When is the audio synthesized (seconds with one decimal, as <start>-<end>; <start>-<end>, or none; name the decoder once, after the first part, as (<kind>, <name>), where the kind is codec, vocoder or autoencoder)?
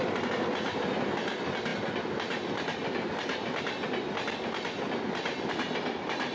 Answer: none